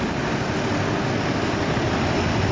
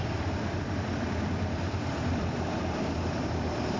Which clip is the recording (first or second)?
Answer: first